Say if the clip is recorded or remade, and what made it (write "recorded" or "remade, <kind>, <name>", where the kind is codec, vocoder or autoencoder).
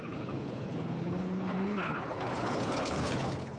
remade, codec, HILCodec